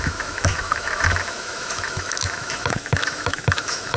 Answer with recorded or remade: remade